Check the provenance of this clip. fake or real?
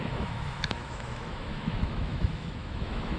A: fake